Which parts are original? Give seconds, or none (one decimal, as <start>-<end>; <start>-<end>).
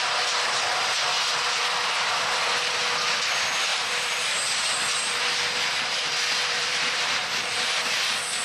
0.0-3.7; 4.6-6.4; 7.9-8.4